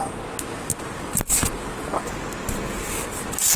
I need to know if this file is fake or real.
real